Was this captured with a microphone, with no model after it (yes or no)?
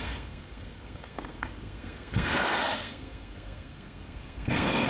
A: no